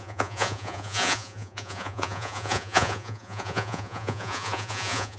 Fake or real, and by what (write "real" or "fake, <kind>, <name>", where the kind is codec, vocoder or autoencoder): fake, vocoder, Vocos